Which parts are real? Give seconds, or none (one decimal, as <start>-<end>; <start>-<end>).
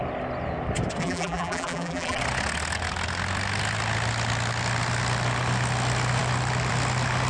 0.0-1.0; 2.2-7.3